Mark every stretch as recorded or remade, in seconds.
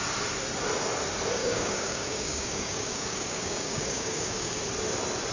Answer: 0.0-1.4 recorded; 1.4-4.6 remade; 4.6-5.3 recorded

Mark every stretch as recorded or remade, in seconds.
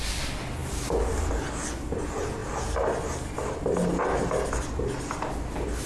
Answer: 0.0-5.9 recorded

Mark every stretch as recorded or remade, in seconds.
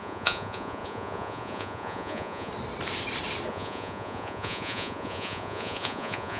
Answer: 0.0-2.5 remade; 2.5-3.5 recorded; 3.5-6.4 remade